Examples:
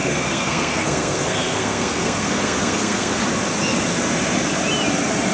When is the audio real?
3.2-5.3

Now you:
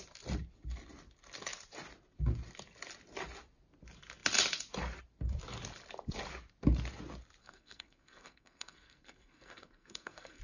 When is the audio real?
0.0-7.4

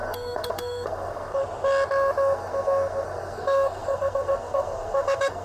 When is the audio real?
1.4-2.2

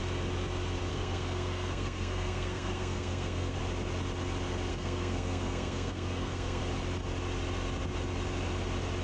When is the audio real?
0.0-0.9; 3.6-4.7; 6.6-9.0

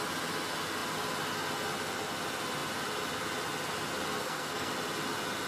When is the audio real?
0.0-4.2; 4.7-5.5

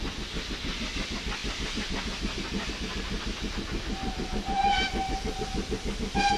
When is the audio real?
0.0-6.4

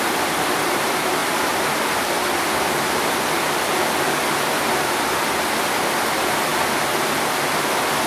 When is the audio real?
0.0-8.1

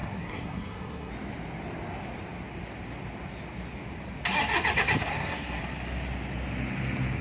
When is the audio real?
1.1-5.1; 5.6-7.2